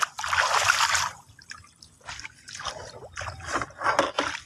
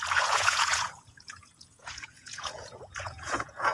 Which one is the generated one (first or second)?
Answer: second